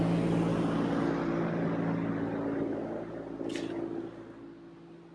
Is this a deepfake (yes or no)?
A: no